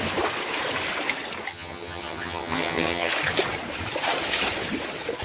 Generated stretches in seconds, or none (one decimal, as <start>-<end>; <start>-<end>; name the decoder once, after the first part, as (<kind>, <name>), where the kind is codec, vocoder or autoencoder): 1.5-3.1 (vocoder, HiFi-GAN)